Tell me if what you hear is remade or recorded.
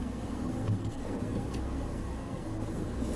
remade